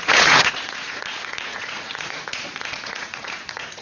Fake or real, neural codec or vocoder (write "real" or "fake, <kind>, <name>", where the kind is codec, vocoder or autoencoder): fake, vocoder, Vocos